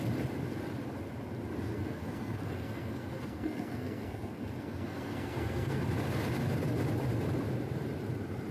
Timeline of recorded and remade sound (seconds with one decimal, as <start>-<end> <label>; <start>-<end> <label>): 0.0-1.7 recorded; 1.7-5.8 remade; 5.8-8.5 recorded